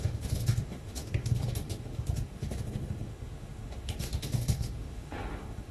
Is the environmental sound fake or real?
fake